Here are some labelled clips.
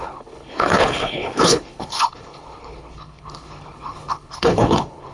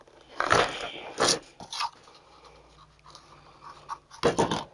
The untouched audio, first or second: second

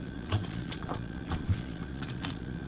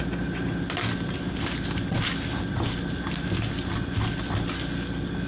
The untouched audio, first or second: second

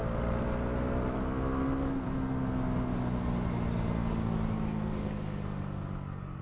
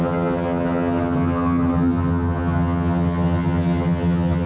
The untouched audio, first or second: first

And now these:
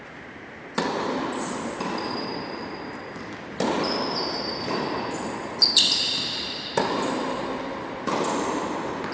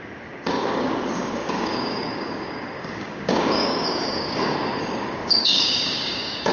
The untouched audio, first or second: first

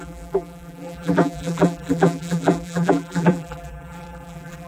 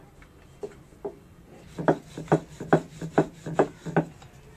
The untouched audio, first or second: second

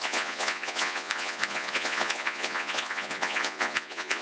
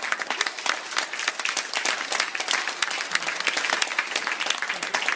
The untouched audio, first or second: second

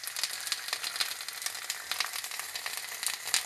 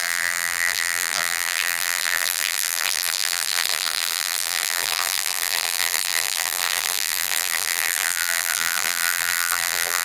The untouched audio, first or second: first